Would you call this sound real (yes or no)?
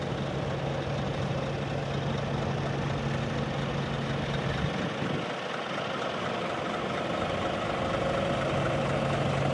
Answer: yes